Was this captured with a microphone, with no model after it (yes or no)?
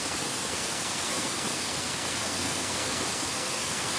no